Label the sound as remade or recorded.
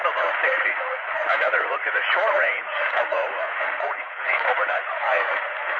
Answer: remade